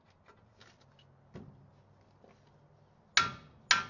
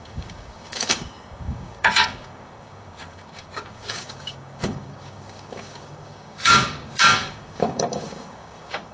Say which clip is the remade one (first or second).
second